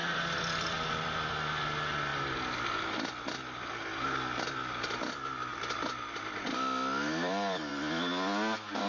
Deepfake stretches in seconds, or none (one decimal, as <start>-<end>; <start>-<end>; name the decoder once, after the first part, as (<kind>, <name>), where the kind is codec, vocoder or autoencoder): 0.0-1.3 (vocoder, BigVGAN v2); 5.5-7.7